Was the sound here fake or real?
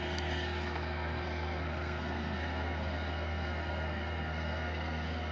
fake